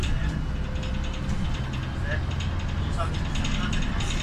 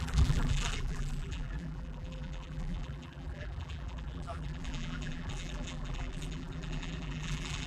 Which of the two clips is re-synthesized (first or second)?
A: second